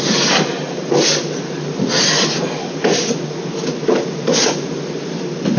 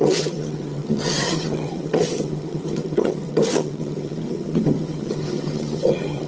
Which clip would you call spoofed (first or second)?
second